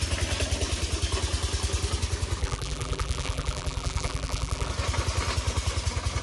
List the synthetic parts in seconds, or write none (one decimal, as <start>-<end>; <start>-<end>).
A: 2.4-4.7